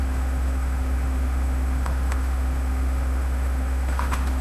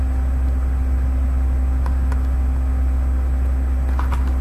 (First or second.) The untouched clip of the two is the second